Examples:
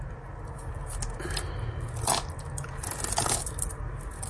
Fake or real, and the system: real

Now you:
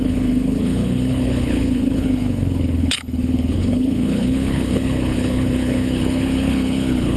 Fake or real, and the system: fake, codec, HILCodec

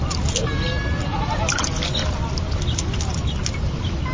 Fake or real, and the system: real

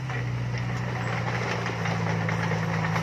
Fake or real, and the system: real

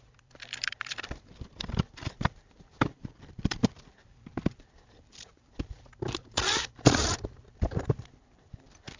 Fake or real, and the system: fake, vocoder, BigVGAN v2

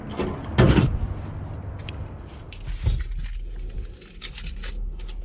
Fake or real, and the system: real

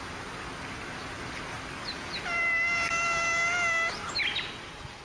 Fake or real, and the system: real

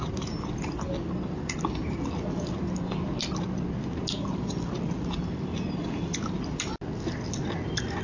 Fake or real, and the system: real